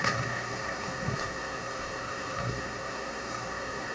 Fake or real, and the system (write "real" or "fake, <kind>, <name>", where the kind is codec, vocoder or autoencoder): fake, codec, SNAC